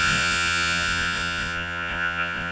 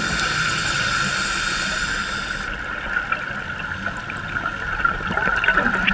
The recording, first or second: second